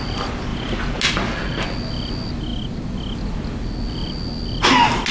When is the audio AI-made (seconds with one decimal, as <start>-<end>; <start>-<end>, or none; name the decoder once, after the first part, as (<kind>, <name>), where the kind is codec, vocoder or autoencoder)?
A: none